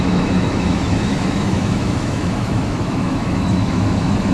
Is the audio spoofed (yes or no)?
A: yes